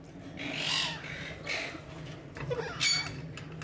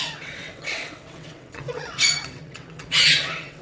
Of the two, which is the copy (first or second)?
second